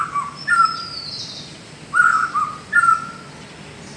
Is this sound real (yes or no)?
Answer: yes